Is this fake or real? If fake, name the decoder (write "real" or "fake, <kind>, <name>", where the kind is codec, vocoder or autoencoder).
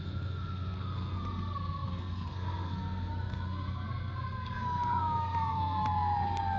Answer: fake, codec, SNAC